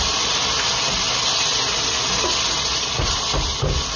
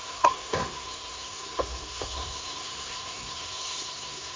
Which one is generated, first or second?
second